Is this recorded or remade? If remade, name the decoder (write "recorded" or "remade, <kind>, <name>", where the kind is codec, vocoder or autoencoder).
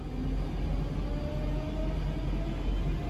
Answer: recorded